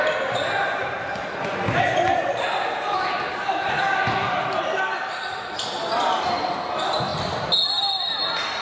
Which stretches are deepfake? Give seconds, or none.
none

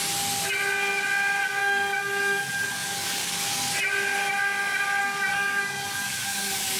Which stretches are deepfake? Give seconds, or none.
1.6-3.7 (codec, DAC); 5.0-6.8

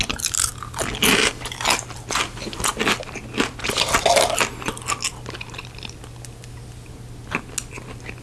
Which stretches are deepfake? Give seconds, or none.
none

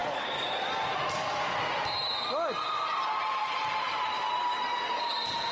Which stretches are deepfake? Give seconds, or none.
3.4-5.1 (vocoder, BigVGAN v2)

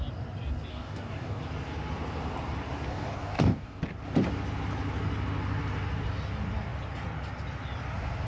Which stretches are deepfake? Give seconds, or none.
0.7-1.4 (codec, DAC); 2.9-3.8

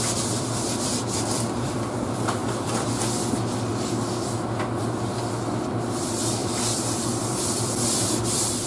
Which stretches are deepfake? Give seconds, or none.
0.0-2.4 (vocoder, BigVGAN v2); 5.7-8.7

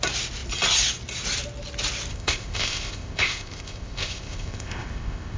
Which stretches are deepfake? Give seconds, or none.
2.1-5.4 (codec, ZipCodec)

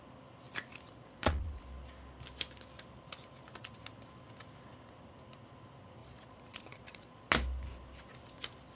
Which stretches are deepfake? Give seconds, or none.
0.9-1.6 (vocoder, Vocos); 6.0-7.3